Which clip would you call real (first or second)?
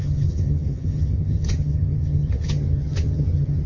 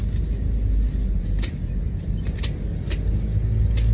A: second